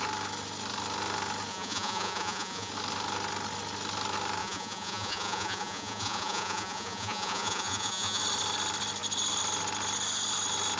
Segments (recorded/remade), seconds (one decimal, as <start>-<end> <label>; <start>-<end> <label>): 0.0-1.5 recorded; 1.5-2.7 remade; 2.7-4.4 recorded; 4.4-8.2 remade; 8.2-10.8 recorded